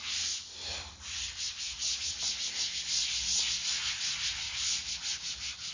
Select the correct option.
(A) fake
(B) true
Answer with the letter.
B